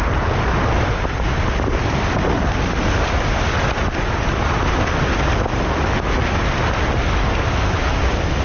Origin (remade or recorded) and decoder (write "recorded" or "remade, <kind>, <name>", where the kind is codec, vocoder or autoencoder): recorded